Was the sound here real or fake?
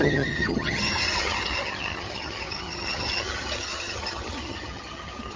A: fake